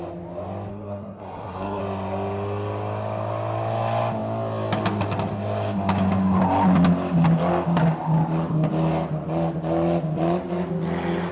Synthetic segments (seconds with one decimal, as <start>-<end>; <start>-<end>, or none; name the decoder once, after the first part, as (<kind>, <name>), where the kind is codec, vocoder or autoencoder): 0.7-1.8 (codec, SNAC)